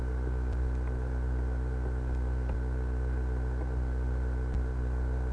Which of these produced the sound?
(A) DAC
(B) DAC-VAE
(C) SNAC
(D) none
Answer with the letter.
D